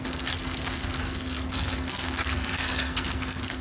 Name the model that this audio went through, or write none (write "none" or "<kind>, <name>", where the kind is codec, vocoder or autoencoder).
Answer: codec, SNAC